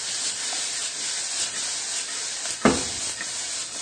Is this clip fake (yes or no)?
no